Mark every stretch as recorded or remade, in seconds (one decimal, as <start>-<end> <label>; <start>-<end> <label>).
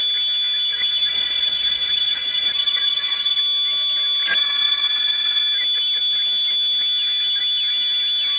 0.0-0.7 recorded; 0.7-3.4 remade; 3.4-4.3 recorded; 4.3-5.4 remade; 5.4-8.4 recorded